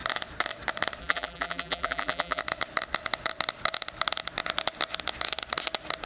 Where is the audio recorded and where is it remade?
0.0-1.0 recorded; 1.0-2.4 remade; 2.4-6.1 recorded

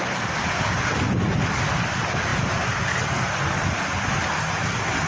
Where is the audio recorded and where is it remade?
0.0-5.1 recorded